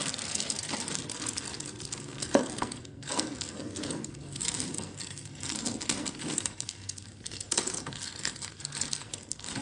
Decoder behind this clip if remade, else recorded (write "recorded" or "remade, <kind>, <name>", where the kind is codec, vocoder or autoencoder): remade, codec, SNAC